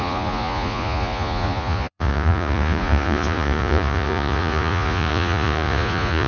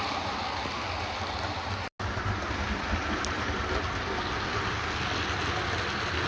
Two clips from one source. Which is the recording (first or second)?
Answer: second